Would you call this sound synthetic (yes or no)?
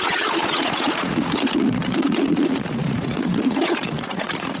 yes